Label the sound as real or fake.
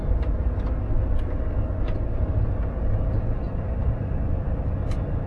real